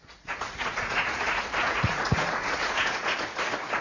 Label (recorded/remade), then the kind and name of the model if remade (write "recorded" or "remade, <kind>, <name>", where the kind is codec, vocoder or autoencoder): remade, vocoder, Vocos